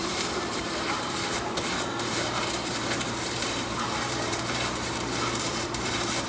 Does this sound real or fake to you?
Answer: fake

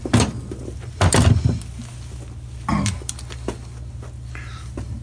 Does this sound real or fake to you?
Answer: real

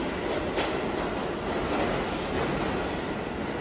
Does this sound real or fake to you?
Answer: real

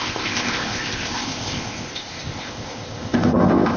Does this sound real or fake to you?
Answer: fake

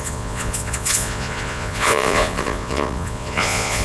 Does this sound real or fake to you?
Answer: fake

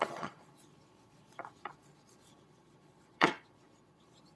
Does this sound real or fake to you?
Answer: fake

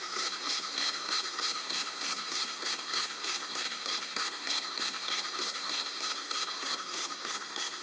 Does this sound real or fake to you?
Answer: fake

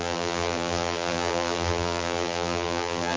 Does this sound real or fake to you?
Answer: fake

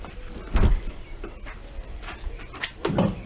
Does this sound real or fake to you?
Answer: real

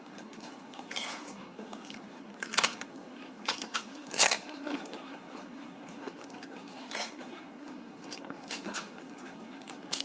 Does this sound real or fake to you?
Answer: fake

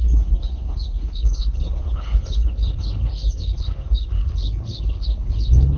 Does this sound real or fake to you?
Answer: fake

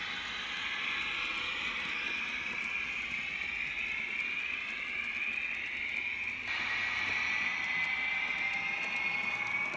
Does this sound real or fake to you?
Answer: real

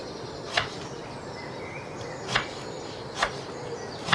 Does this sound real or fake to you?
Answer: real